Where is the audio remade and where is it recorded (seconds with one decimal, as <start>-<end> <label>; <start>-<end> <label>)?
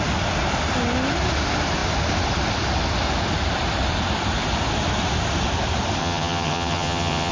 0.0-6.0 recorded; 6.0-7.3 remade